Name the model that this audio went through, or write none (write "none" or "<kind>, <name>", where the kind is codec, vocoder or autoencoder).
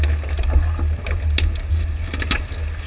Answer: none